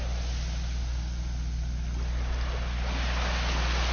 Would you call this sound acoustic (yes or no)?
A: yes